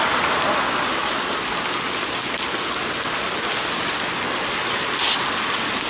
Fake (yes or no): no